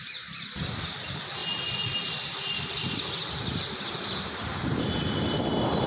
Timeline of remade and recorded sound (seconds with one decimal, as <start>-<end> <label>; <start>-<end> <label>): 0.0-5.9 recorded